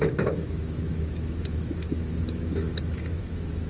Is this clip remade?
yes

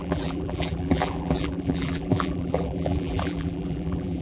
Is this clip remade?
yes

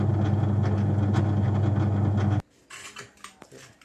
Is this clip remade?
no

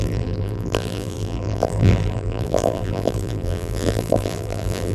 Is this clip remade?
yes